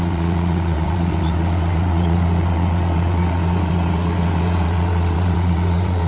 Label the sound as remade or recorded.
remade